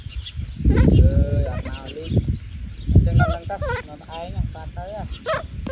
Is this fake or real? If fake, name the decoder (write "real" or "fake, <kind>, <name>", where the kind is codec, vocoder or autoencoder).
real